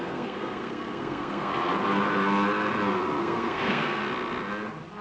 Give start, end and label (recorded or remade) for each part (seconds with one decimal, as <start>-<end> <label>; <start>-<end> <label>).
0.0-1.5 remade; 1.5-3.2 recorded; 3.2-4.0 remade; 4.0-5.0 recorded